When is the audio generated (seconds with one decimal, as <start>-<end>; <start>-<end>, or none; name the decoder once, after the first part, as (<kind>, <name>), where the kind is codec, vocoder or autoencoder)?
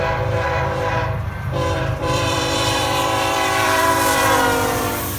1.0-3.9 (vocoder, BigVGAN v2)